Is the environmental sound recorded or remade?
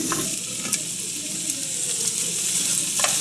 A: recorded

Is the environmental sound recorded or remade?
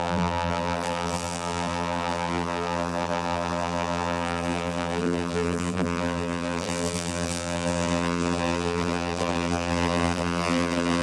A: remade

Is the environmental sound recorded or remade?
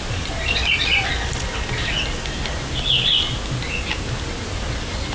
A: recorded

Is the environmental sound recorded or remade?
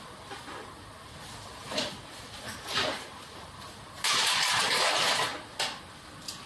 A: recorded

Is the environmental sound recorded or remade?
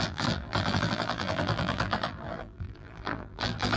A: remade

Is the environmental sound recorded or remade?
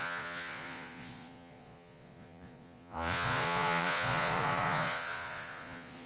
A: remade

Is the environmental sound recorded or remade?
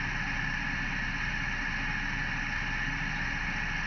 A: recorded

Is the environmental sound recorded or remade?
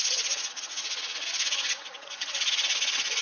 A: remade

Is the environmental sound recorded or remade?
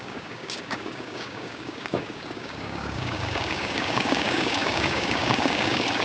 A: remade